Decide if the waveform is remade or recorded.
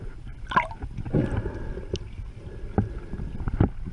recorded